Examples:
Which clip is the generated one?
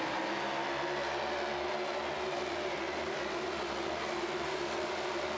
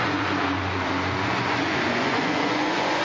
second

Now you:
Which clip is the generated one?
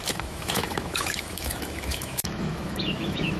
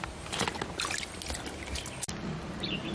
first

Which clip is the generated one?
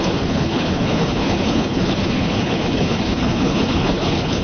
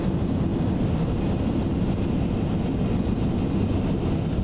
first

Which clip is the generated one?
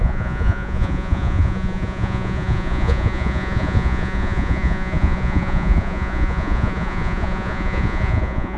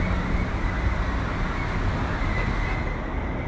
first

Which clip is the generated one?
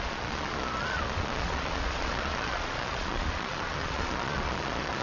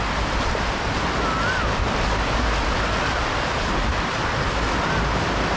first